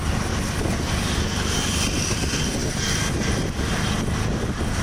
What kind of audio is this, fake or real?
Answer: real